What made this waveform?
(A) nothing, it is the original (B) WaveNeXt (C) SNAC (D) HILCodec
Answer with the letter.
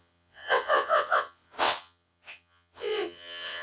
B